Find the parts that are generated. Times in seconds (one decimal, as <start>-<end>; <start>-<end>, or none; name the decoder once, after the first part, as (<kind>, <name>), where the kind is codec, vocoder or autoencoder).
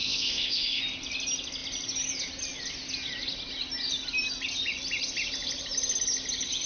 0.0-0.8 (codec, ZipCodec)